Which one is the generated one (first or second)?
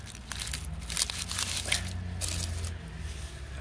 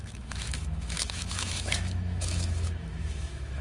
second